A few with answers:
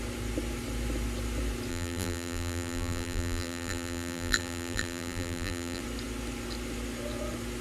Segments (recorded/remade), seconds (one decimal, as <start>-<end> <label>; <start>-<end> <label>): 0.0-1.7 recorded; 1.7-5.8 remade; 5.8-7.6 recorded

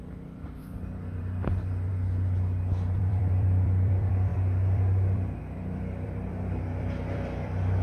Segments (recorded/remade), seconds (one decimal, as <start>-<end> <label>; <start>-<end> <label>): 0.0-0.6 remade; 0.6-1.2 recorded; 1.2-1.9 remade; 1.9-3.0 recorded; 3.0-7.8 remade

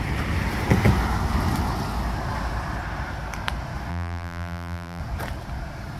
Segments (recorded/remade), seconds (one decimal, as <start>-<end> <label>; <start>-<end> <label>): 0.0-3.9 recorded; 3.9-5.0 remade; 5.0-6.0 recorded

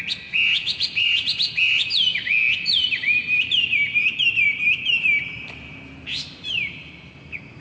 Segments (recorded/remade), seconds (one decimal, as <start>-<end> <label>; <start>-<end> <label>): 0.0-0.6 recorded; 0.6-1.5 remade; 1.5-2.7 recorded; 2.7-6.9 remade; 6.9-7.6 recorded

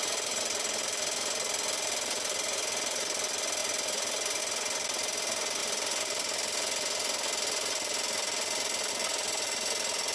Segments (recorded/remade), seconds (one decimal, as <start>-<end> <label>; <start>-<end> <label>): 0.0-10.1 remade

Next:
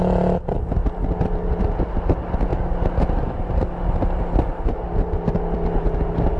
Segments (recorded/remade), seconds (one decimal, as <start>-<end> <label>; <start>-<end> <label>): 0.0-6.4 recorded

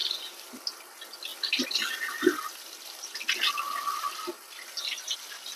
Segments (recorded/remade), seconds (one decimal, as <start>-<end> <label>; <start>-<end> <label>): 0.0-0.5 remade; 0.5-5.6 recorded

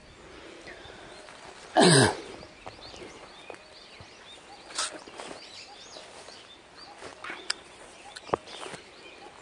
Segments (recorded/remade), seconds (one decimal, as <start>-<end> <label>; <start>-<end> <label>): 0.0-7.1 recorded; 7.1-8.9 remade; 8.9-9.4 recorded